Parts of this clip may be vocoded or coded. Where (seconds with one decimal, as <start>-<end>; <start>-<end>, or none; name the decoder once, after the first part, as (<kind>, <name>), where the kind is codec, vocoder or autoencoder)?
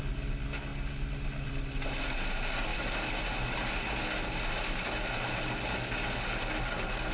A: none